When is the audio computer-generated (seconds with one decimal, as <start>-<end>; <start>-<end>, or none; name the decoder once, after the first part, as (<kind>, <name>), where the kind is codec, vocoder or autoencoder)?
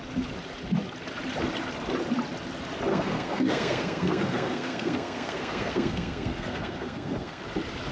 2.9-7.4 (codec, SNAC)